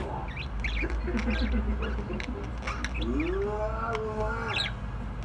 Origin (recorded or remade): recorded